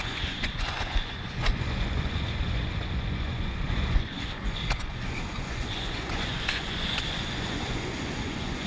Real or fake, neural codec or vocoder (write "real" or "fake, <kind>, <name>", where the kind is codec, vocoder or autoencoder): fake, vocoder, Vocos